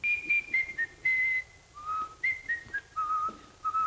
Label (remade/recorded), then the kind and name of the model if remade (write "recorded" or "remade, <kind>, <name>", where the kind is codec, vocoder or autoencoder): recorded